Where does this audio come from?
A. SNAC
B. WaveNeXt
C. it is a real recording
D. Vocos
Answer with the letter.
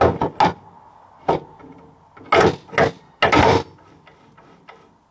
C